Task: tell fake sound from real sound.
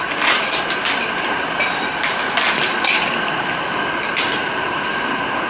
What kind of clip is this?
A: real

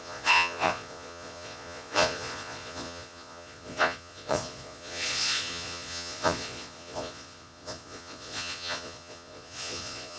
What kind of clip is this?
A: fake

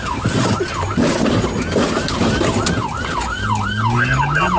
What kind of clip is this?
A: real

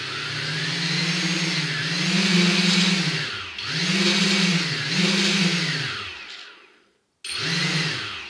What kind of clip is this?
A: real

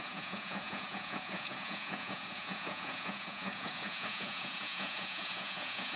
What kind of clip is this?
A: fake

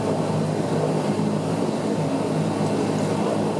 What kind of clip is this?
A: real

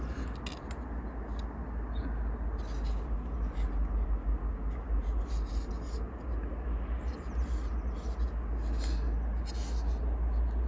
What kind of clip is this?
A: real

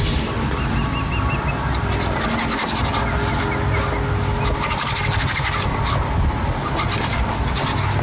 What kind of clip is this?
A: real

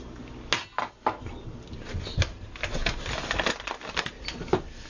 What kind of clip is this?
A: real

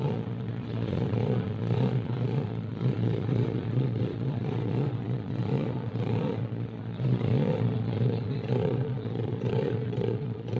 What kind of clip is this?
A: fake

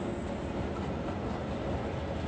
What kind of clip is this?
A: real